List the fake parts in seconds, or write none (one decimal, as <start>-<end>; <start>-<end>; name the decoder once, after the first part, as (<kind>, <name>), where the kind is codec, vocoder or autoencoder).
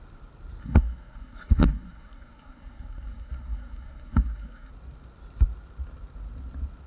0.6-4.7 (codec, SNAC)